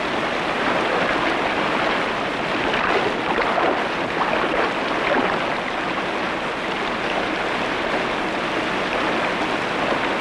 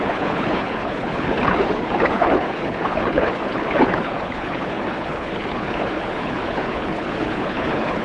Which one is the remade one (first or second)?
second